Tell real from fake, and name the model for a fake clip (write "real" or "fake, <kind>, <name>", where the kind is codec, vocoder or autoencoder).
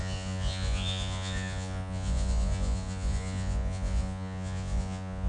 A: fake, vocoder, Vocos